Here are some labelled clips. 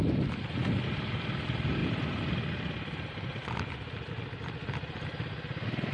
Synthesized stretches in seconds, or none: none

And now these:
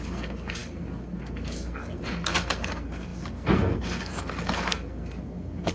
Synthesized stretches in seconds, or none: 0.0-5.7

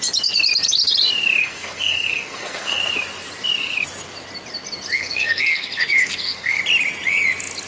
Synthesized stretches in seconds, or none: 1.4-2.8; 4.9-6.6

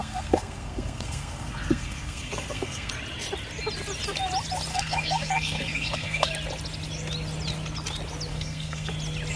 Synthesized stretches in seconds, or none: 0.0-2.9; 4.7-6.3; 8.3-8.9

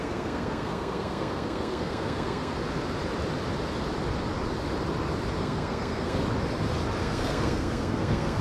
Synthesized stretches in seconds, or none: 0.0-2.6; 5.4-6.2; 7.0-8.4

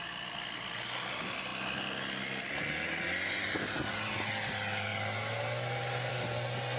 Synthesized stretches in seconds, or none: none